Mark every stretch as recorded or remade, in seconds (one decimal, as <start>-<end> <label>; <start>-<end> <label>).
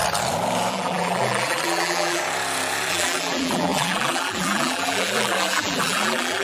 0.0-0.7 recorded; 0.7-2.2 remade; 2.2-2.9 recorded; 2.9-6.4 remade